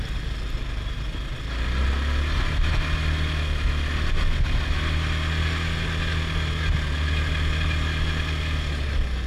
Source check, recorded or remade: recorded